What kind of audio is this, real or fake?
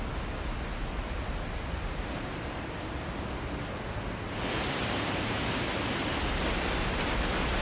real